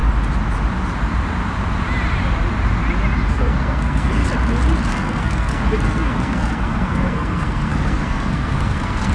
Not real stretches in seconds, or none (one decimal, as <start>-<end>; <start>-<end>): 3.3-4.2; 4.9-9.1